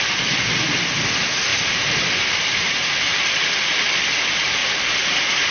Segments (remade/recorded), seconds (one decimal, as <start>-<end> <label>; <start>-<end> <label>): 0.0-1.5 recorded; 1.5-2.9 remade; 2.9-5.5 recorded